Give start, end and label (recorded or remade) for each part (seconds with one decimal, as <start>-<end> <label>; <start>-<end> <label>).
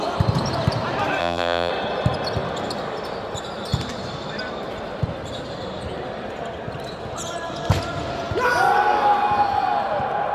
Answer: 0.0-1.2 recorded; 1.2-1.7 remade; 1.7-10.3 recorded